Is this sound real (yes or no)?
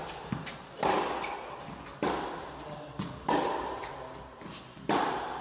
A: yes